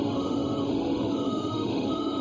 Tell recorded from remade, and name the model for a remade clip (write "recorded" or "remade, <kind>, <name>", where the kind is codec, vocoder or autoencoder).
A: remade, autoencoder, DAC-VAE